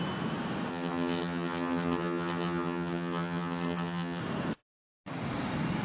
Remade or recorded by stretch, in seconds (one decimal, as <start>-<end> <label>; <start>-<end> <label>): 0.0-0.7 recorded; 0.7-4.2 remade; 4.2-5.8 recorded